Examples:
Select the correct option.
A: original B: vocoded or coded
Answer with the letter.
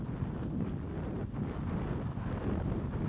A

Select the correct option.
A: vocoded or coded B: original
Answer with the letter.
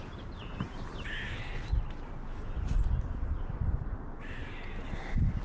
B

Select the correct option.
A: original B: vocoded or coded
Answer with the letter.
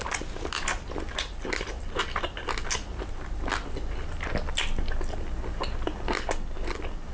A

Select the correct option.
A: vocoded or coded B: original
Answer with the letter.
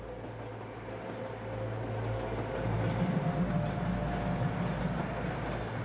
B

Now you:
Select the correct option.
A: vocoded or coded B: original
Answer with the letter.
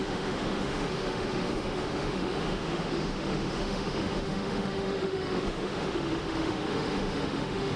A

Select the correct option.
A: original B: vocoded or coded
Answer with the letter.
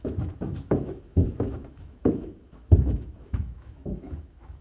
B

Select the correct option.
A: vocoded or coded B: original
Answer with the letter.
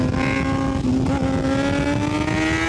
B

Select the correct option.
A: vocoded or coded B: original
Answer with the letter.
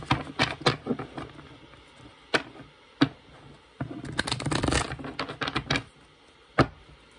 B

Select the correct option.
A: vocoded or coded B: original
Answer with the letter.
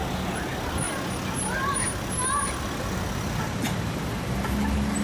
B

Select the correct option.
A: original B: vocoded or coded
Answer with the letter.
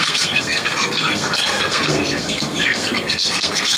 B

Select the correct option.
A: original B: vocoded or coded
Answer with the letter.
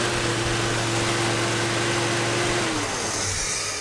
A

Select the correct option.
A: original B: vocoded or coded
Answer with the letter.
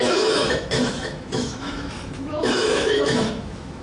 B